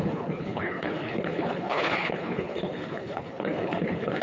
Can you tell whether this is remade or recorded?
remade